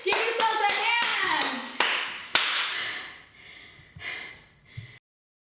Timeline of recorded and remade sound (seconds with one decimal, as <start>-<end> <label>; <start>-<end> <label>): 0.0-5.4 recorded